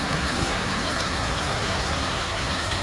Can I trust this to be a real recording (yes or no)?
no